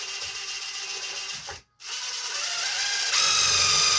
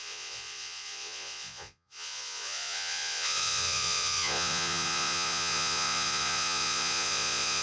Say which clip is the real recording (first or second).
first